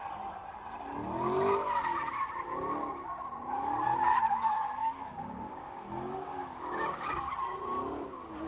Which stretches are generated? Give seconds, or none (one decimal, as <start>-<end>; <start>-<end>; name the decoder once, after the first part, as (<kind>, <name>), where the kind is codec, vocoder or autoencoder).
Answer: 4.1-7.3 (codec, DAC)